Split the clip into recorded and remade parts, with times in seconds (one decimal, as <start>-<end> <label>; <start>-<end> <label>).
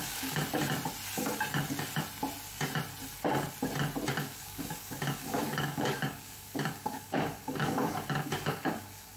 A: 0.0-0.4 remade; 0.4-4.1 recorded; 4.1-9.2 remade